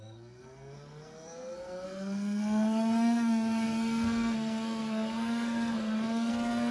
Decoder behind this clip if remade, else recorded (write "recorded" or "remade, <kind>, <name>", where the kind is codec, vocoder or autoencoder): remade, codec, SNAC